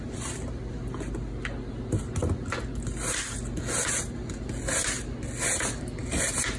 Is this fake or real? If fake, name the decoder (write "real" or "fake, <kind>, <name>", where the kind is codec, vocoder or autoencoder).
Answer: real